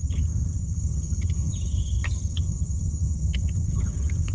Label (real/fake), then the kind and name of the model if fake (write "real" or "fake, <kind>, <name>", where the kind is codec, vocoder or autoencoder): fake, vocoder, HiFi-GAN